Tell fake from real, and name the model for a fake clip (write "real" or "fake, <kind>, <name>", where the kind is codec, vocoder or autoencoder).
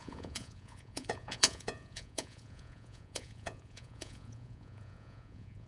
fake, vocoder, Vocos